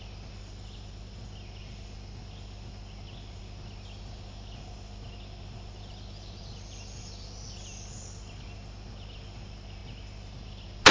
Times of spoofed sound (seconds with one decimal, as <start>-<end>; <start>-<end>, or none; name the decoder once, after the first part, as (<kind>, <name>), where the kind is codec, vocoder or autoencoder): none